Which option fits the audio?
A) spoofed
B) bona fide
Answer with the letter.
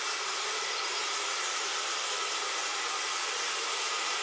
B